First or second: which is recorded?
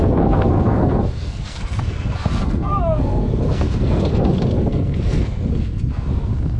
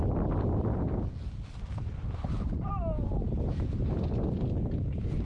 second